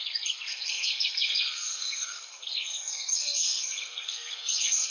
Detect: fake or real fake